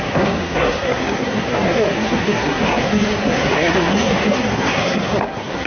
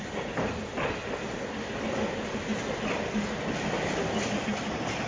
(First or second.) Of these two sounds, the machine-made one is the first